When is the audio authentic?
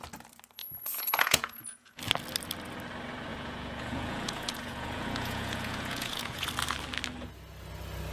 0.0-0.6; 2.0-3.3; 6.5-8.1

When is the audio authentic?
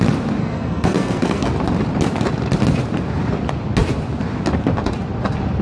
0.0-0.4; 1.5-5.6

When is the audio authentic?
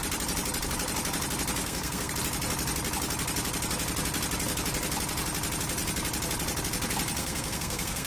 0.0-1.6; 2.1-7.2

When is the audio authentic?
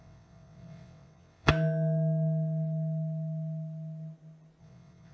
1.5-4.6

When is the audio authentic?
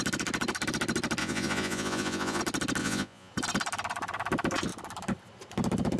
0.0-1.2; 2.4-2.8; 3.3-6.0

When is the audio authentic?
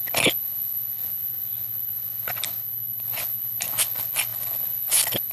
none